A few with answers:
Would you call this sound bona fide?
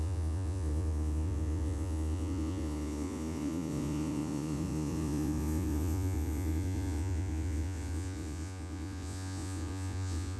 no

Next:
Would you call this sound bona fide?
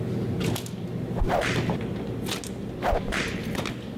yes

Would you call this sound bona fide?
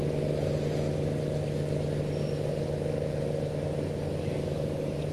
yes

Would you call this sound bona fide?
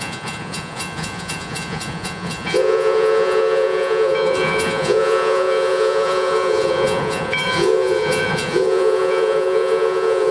no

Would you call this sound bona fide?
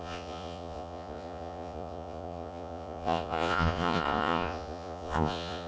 no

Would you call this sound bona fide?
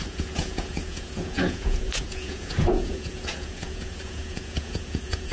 no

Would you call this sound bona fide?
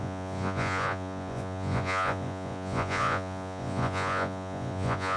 no